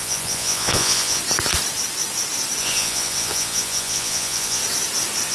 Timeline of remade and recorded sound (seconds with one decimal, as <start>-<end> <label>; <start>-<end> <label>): 0.0-1.2 remade; 1.2-2.6 recorded; 2.6-4.6 remade; 4.6-5.3 recorded